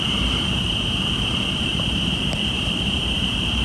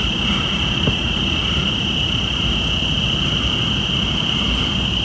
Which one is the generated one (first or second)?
first